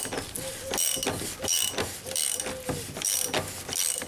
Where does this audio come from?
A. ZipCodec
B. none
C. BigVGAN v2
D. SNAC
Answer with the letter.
B